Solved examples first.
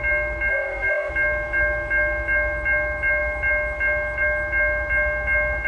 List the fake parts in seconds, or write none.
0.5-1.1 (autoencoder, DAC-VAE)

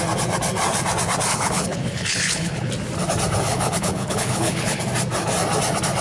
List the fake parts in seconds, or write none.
1.3-2.7 (codec, HILCodec); 3.5-4.8

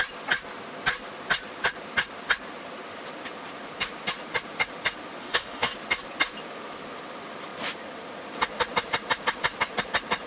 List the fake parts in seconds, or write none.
5.2-5.7 (autoencoder, DAC-VAE)

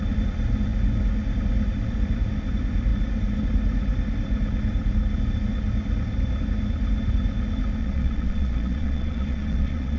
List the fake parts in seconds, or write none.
7.8-10.0 (vocoder, Vocos)

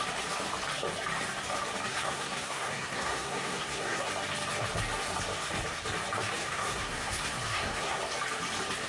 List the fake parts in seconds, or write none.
1.9-4.1 (codec, SNAC); 6.4-8.0

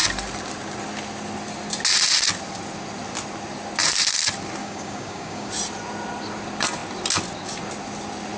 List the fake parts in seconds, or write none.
4.6-5.5 (codec, DAC)